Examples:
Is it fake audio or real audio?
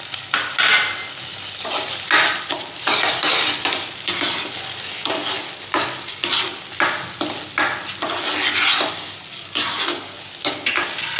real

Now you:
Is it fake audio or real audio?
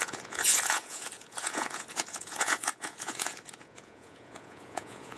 fake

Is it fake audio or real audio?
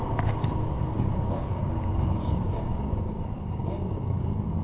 fake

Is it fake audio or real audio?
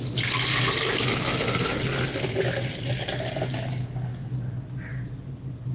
real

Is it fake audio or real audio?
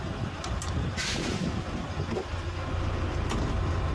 real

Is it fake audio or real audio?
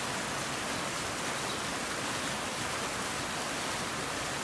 real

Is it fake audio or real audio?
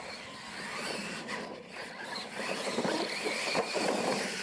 fake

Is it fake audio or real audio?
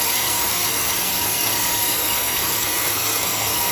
fake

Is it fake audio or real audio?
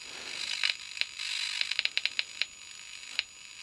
real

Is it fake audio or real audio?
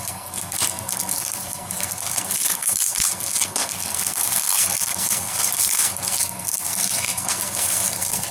fake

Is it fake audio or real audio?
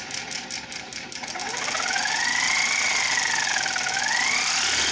real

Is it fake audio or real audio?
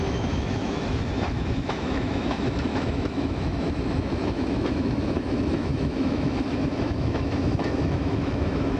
fake